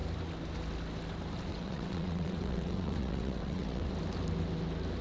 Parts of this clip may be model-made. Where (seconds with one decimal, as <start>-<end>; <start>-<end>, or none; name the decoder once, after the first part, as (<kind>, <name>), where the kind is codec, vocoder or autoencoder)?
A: 1.5-3.9 (vocoder, WaveNeXt)